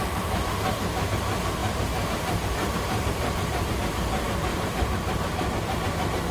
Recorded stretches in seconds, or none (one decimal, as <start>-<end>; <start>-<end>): 0.0-1.6; 3.8-4.5